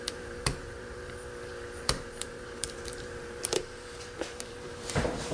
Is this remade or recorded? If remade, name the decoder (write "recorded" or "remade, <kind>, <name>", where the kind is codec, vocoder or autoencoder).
remade, vocoder, BigVGAN v2